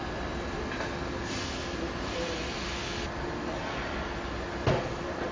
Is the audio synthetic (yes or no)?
no